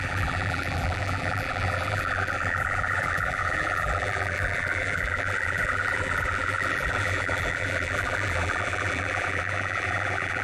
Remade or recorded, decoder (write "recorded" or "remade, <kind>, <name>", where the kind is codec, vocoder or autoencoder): remade, vocoder, BigVGAN v2